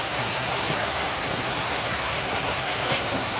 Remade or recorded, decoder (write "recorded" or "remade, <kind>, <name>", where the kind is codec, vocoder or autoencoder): remade, codec, SNAC